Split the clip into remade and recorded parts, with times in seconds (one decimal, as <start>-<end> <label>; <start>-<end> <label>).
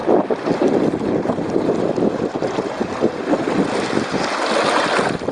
0.0-5.3 recorded